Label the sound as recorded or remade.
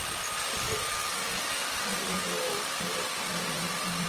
recorded